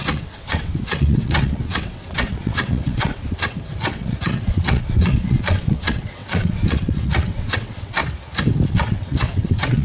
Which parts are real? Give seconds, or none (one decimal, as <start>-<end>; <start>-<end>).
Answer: 8.0-8.7

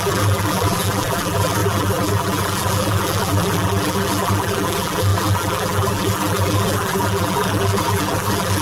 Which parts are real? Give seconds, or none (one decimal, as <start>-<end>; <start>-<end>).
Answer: none

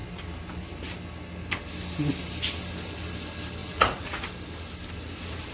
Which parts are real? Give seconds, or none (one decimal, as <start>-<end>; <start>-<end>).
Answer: 0.0-3.6; 4.2-5.5

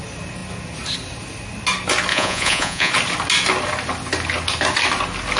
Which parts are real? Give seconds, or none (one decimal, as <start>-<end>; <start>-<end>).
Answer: 0.0-2.1; 2.9-5.4